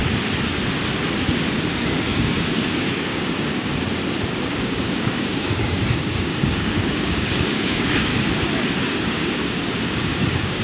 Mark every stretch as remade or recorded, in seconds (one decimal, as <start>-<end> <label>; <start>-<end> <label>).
0.0-1.7 recorded; 1.7-3.7 remade; 3.7-4.4 recorded; 4.4-8.1 remade; 8.1-8.8 recorded; 8.8-10.6 remade